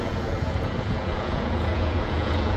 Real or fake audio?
fake